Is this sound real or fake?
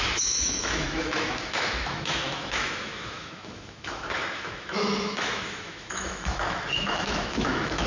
fake